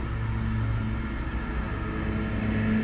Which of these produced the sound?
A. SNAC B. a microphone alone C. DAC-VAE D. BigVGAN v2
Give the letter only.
B